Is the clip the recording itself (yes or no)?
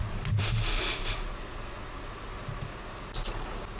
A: yes